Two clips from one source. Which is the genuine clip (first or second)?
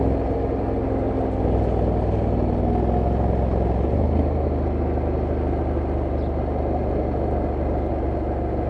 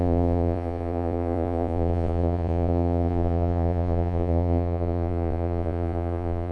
first